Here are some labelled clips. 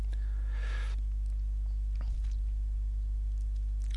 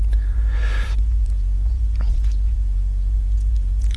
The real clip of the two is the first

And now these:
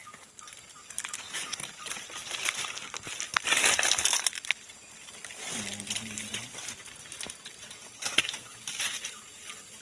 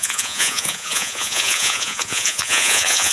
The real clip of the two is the first